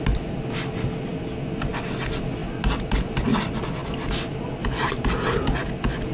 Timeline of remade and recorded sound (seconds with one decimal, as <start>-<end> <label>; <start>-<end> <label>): 0.0-3.8 recorded; 3.8-4.5 remade; 4.5-6.1 recorded